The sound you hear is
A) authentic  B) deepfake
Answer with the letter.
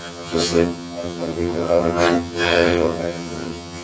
B